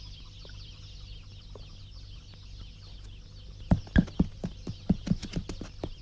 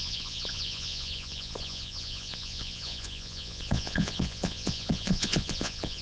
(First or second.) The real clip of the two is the first